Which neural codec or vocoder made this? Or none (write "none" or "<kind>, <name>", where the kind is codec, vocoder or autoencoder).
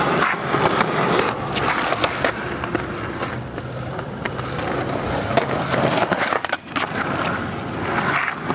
none